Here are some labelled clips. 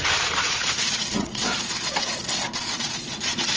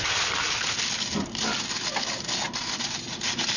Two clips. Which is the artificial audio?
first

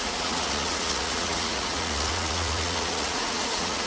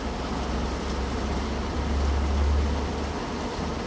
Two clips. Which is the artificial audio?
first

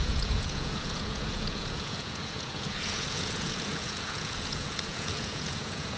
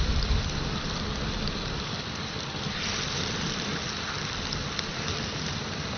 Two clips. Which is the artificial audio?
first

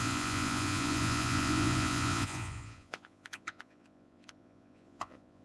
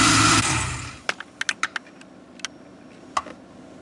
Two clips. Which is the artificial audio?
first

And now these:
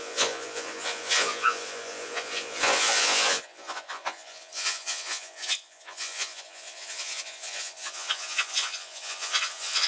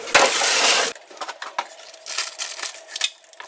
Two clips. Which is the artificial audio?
first